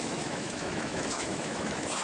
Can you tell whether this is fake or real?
fake